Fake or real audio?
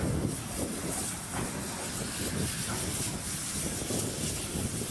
real